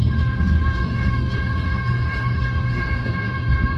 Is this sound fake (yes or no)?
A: yes